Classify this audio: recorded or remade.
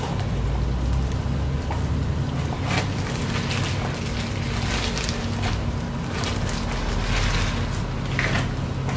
recorded